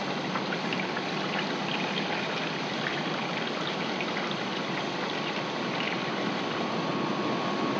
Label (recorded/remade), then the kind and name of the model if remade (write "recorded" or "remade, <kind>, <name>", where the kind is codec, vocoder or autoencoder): remade, vocoder, BigVGAN v2